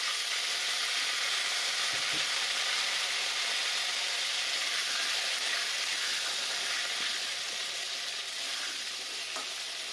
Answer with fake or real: real